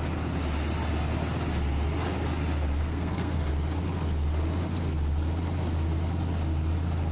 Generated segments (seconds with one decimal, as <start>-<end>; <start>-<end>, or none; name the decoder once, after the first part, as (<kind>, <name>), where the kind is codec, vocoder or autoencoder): 2.8-3.5 (codec, SNAC)